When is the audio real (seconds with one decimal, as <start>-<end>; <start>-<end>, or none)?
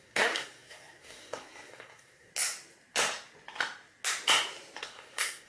2.3-4.8